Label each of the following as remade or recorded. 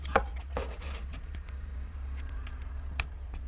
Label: remade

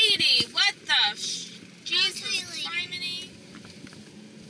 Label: recorded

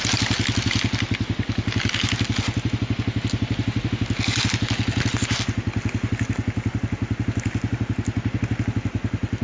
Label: recorded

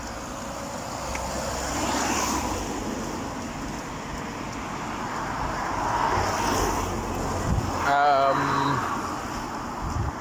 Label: recorded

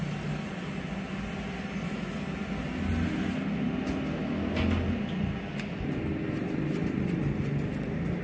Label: recorded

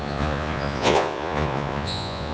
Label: remade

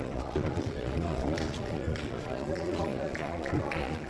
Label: remade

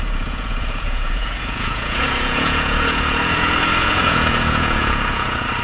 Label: remade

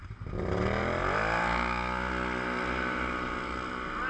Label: recorded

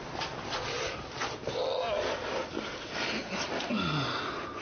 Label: recorded